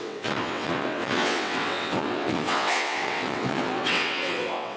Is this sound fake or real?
fake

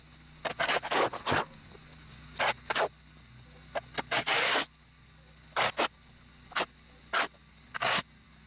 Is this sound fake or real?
real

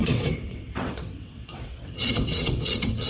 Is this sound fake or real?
fake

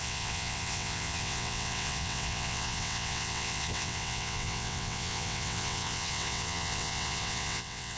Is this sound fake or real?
fake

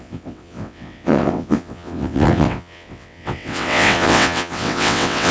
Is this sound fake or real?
fake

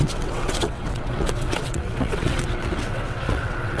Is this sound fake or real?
fake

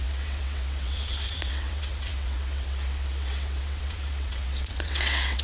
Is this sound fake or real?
fake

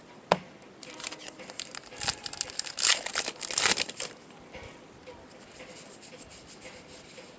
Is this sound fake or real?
real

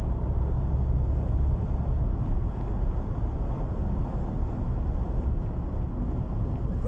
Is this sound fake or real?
real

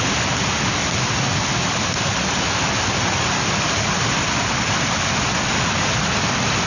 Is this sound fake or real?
real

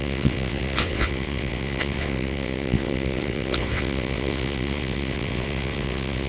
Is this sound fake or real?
fake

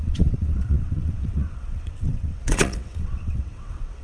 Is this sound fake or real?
fake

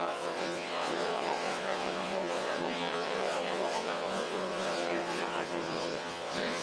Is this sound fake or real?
fake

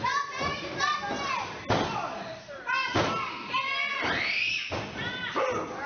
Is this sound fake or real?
real